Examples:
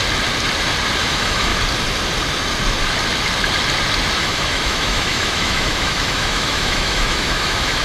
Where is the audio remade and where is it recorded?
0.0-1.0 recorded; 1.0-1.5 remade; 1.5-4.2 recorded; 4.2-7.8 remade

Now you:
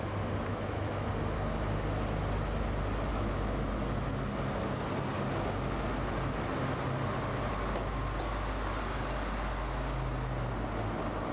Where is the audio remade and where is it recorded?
0.0-0.5 recorded; 0.5-1.1 remade; 1.1-3.1 recorded; 3.1-3.7 remade; 3.7-11.3 recorded